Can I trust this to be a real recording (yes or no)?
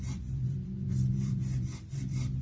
no